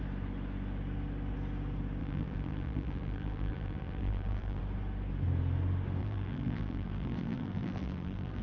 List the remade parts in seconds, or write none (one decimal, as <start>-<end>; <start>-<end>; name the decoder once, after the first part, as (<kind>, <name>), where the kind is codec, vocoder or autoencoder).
2.0-4.6 (vocoder, BigVGAN v2); 6.0-8.4